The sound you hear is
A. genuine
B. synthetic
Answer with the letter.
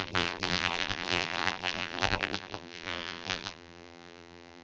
B